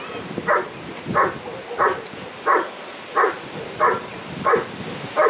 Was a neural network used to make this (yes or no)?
no